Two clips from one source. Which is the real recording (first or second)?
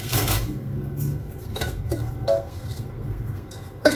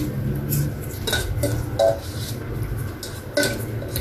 second